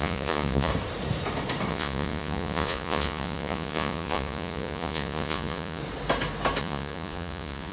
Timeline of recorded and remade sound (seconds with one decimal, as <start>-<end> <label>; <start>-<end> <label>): 0.0-0.7 remade; 0.7-1.7 recorded; 1.7-5.8 remade; 5.8-6.6 recorded; 6.6-7.7 remade